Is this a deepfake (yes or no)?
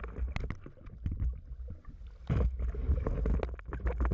no